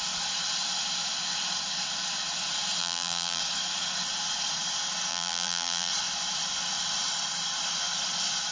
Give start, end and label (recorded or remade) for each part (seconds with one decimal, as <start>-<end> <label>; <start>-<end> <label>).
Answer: 0.0-2.8 recorded; 2.8-3.4 remade; 3.4-5.1 recorded; 5.1-5.9 remade; 5.9-8.5 recorded